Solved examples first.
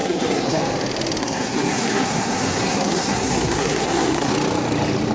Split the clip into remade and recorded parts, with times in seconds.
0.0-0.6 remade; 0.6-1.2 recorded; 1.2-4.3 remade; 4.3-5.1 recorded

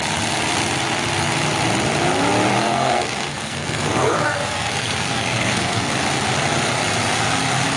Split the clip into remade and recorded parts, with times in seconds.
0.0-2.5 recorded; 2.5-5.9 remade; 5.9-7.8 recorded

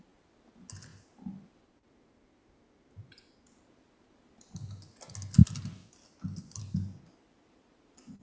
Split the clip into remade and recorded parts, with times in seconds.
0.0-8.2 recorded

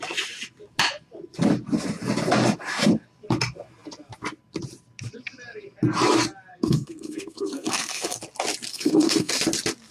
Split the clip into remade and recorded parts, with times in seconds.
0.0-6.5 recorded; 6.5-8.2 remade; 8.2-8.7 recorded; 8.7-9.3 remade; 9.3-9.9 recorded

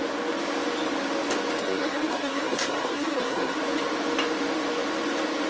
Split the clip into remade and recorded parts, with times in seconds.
0.0-1.6 recorded; 1.6-3.6 remade; 3.6-5.5 recorded

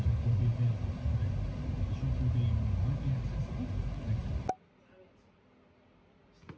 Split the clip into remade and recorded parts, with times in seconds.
0.0-6.6 recorded

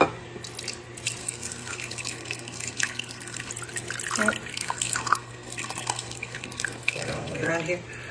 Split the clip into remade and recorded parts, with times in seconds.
0.0-1.2 recorded; 1.2-3.5 remade; 3.5-4.5 recorded; 4.5-7.5 remade; 7.5-8.1 recorded

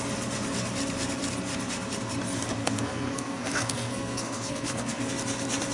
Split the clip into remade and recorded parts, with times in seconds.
0.0-2.6 recorded; 2.6-5.1 remade; 5.1-5.7 recorded